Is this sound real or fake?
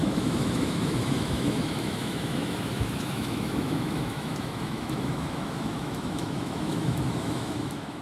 fake